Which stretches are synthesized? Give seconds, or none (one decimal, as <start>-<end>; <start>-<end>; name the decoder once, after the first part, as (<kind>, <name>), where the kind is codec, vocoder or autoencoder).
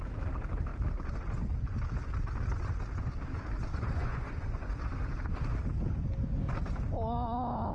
3.7-4.7 (vocoder, Vocos)